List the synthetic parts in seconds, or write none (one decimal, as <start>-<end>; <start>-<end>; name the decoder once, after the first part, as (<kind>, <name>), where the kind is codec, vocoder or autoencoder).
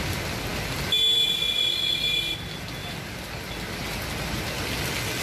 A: none